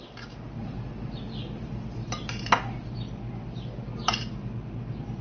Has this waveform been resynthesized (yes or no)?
no